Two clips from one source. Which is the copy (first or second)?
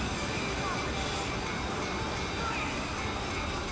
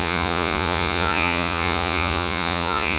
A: second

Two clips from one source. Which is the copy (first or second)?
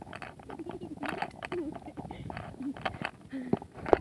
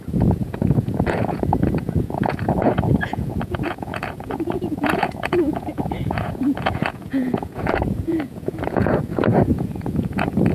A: second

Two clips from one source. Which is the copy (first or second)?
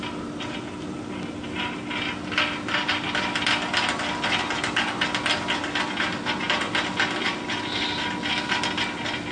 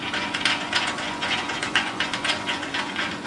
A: second